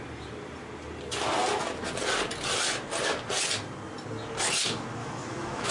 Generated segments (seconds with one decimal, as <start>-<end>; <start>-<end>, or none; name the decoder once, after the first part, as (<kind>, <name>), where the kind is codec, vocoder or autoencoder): 5.0-5.7 (autoencoder, DAC-VAE)